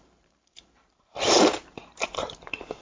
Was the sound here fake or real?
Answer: fake